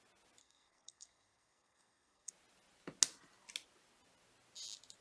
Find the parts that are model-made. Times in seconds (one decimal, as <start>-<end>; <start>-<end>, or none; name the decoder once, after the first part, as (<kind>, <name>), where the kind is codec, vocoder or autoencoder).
0.4-2.3 (codec, SNAC)